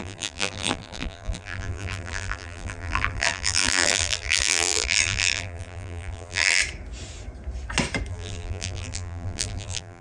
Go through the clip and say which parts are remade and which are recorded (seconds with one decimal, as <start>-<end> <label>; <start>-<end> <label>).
0.0-6.6 remade; 6.6-8.1 recorded; 8.1-10.0 remade